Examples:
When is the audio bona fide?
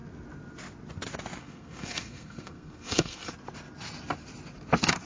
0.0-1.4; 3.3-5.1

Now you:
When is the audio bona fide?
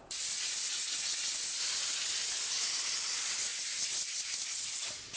0.0-5.2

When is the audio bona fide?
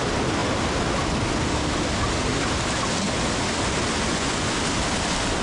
0.0-4.1; 4.6-5.4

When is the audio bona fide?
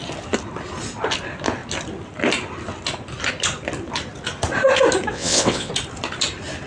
0.0-5.1; 5.7-6.7